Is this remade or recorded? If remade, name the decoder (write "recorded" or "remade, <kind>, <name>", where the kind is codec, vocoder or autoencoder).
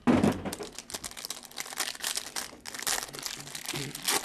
recorded